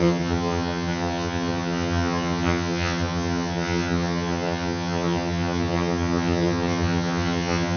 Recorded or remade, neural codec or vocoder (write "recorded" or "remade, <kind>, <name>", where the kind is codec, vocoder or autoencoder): remade, vocoder, HiFi-GAN